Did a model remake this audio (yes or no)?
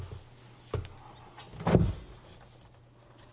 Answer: no